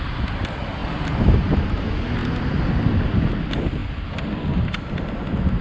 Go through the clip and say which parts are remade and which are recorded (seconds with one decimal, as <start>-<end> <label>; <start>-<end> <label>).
0.0-5.6 recorded